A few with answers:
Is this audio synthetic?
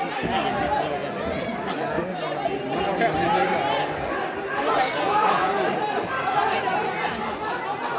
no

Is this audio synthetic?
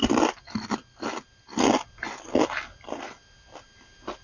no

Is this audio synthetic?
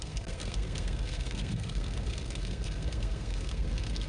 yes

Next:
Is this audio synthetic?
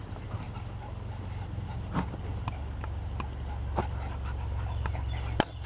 no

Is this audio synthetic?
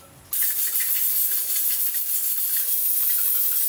no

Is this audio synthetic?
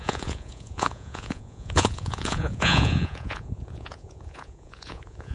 yes